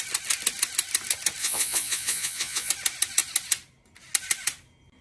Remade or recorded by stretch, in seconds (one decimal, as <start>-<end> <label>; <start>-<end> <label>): 0.0-1.4 recorded; 1.4-2.7 remade; 2.7-5.0 recorded